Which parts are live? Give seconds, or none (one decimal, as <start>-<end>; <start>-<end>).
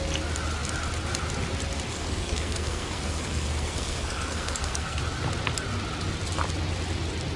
0.0-1.9; 5.0-7.4